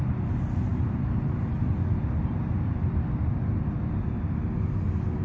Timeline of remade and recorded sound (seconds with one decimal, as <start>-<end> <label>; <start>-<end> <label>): 0.0-0.7 recorded; 0.7-3.8 remade; 3.8-5.2 recorded